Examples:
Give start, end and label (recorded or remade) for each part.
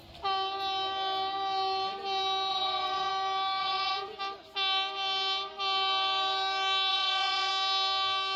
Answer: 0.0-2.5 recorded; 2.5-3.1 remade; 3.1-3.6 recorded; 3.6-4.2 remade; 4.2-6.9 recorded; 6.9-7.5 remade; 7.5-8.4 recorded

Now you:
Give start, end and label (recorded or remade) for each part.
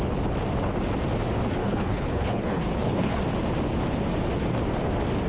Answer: 0.0-1.6 recorded; 1.6-3.2 remade; 3.2-5.3 recorded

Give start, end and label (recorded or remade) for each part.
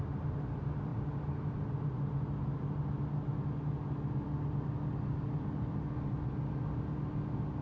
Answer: 0.0-7.6 recorded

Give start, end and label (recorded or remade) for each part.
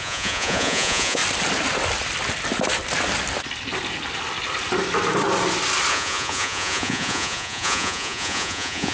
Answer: 0.0-1.2 remade; 1.2-5.9 recorded; 5.9-8.9 remade